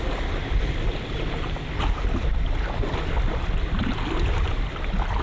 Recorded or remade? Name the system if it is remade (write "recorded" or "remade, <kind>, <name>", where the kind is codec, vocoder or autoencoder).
recorded